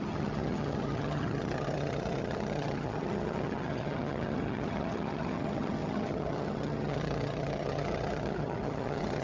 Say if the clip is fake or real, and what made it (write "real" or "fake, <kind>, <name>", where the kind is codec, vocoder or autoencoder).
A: fake, vocoder, HiFi-GAN